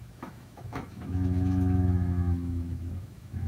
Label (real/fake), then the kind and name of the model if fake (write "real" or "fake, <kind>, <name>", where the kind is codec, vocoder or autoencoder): fake, autoencoder, DAC-VAE